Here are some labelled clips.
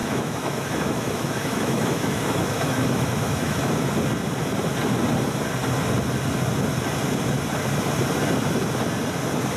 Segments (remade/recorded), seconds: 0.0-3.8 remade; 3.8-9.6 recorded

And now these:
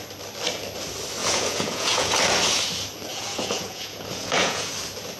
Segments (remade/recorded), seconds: 0.0-1.2 recorded; 1.2-2.2 remade; 2.2-3.1 recorded; 3.1-4.7 remade; 4.7-5.2 recorded

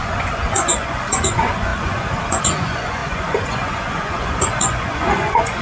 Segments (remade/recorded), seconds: 0.0-5.6 remade

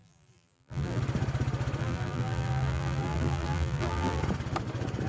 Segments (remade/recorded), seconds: 0.0-1.0 remade; 1.0-1.8 recorded; 1.8-4.2 remade; 4.2-5.1 recorded

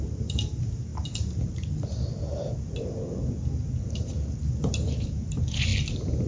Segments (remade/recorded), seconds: 0.0-0.9 remade; 0.9-4.7 recorded; 4.7-5.7 remade; 5.7-6.3 recorded

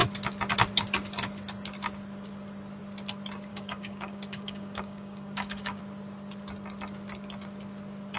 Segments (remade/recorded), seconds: 0.0-3.5 recorded; 3.5-5.8 remade; 5.8-8.2 recorded

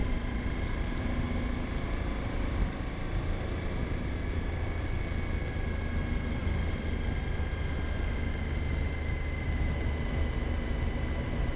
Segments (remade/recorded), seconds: 0.0-1.0 remade; 1.0-11.6 recorded